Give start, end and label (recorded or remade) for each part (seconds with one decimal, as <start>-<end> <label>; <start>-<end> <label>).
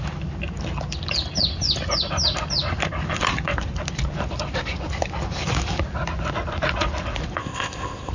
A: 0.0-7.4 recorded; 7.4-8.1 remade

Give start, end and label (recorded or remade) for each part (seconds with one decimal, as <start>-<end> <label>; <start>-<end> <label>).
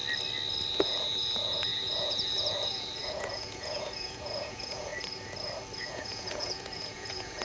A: 0.0-0.7 recorded; 0.7-4.9 remade; 4.9-5.8 recorded; 5.8-7.4 remade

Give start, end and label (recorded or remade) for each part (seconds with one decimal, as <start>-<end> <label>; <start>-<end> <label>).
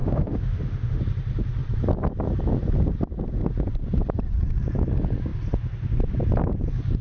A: 0.0-1.0 remade; 1.0-7.0 recorded